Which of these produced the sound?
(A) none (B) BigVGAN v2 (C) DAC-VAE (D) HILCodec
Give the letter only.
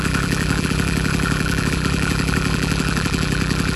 B